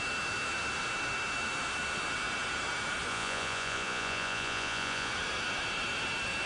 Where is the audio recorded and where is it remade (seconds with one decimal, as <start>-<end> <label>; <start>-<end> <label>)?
0.0-3.1 recorded; 3.1-5.1 remade; 5.1-6.5 recorded

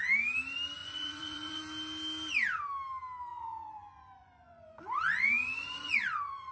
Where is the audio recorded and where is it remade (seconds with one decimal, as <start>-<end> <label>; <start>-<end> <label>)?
0.0-0.8 recorded; 0.8-1.6 remade; 1.6-3.3 recorded; 3.3-6.5 remade

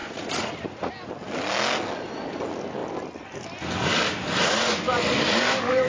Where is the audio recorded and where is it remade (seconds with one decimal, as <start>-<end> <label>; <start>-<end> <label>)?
0.0-0.9 remade; 0.9-5.9 recorded

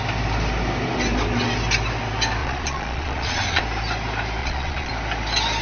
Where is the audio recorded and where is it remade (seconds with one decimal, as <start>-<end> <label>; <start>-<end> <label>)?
0.0-2.4 recorded; 2.4-3.6 remade; 3.6-4.4 recorded; 4.4-4.9 remade; 4.9-5.6 recorded

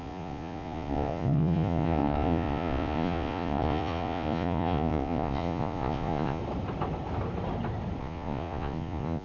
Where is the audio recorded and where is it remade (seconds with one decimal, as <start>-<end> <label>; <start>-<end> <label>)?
0.0-6.4 remade; 6.4-8.0 recorded; 8.0-9.2 remade

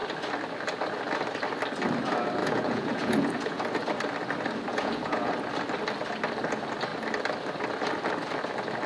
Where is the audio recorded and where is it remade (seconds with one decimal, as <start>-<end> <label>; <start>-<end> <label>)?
0.0-2.4 recorded; 2.4-3.6 remade; 3.6-4.7 recorded; 4.7-5.3 remade; 5.3-8.9 recorded

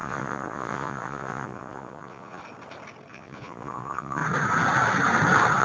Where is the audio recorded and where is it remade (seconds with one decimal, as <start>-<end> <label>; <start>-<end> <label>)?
0.0-2.4 remade; 2.4-3.1 recorded; 3.1-4.2 remade; 4.2-5.6 recorded